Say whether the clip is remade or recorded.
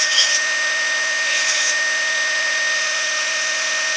remade